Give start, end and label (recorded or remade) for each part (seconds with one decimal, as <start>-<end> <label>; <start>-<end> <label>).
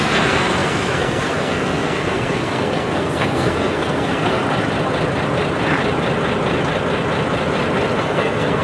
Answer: 0.0-4.4 remade; 4.4-8.0 recorded; 8.0-8.6 remade